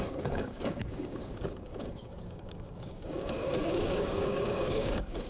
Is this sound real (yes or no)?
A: no